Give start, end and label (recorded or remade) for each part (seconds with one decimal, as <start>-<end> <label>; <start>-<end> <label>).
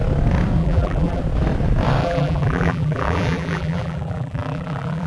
0.0-0.6 recorded; 0.6-1.2 remade; 1.2-2.0 recorded; 2.0-5.1 remade